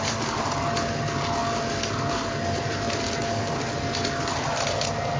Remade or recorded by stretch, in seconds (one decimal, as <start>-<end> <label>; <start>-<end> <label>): 0.0-5.2 recorded

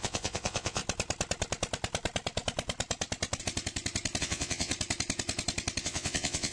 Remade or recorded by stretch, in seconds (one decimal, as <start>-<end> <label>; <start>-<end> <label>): 0.0-0.8 remade; 0.8-4.2 recorded; 4.2-4.7 remade; 4.7-5.8 recorded; 5.8-6.5 remade

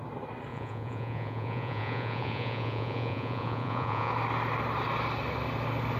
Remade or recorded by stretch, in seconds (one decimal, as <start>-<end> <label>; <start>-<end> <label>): 0.0-0.5 recorded; 0.5-4.1 remade; 4.1-6.0 recorded

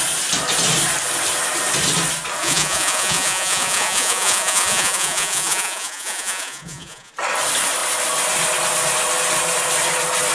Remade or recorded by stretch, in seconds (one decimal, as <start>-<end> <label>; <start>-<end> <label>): 0.0-2.4 recorded; 2.4-7.1 remade; 7.1-10.3 recorded

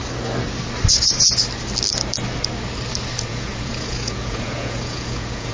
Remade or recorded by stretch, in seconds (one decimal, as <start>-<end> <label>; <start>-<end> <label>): 0.0-3.3 recorded; 3.3-5.5 remade

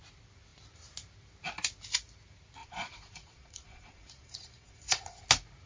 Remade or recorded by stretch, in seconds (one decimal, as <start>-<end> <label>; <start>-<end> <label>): 0.0-2.6 recorded; 2.6-5.2 remade; 5.2-5.7 recorded

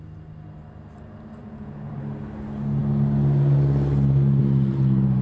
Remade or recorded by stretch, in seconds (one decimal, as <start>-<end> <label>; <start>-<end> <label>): 0.0-1.4 recorded; 1.4-2.0 remade; 2.0-5.2 recorded